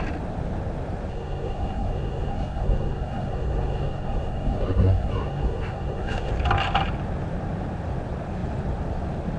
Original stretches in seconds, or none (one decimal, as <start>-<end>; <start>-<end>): 0.0-1.1; 6.3-9.4